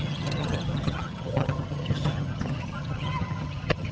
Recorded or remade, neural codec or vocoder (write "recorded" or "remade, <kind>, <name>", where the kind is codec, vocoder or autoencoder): remade, vocoder, HiFi-GAN